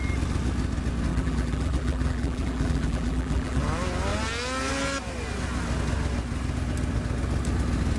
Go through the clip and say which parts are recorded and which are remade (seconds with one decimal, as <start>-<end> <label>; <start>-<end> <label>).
0.0-1.1 recorded; 1.1-3.6 remade; 3.6-8.0 recorded

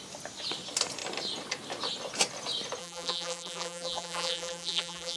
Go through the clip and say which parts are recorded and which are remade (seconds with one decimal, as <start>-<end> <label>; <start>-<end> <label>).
0.0-2.8 recorded; 2.8-5.2 remade

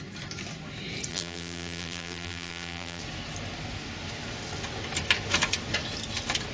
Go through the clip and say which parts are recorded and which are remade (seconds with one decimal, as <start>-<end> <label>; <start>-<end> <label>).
0.0-1.1 recorded; 1.1-3.0 remade; 3.0-6.5 recorded

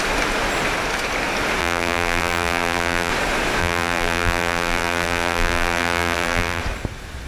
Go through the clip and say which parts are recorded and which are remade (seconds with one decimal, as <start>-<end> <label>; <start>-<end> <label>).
0.0-1.6 recorded; 1.6-3.1 remade; 3.1-3.6 recorded; 3.6-6.6 remade; 6.6-7.3 recorded

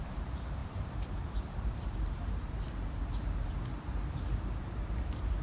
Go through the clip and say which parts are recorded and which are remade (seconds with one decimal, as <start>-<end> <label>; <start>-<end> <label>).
0.0-5.4 remade

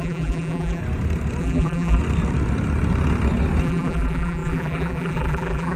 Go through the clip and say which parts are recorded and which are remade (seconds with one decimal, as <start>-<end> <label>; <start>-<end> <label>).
0.0-0.8 remade; 0.8-1.4 recorded; 1.4-2.0 remade; 2.0-3.6 recorded; 3.6-5.8 remade

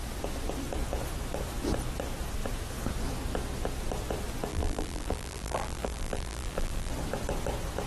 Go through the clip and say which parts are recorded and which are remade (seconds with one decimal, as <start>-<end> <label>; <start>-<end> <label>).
0.0-4.5 recorded; 4.5-6.9 remade; 6.9-7.9 recorded

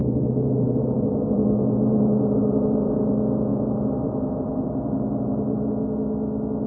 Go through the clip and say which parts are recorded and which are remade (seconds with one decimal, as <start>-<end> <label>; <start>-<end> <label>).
0.0-3.1 remade; 3.1-3.5 recorded; 3.5-5.7 remade; 5.7-6.7 recorded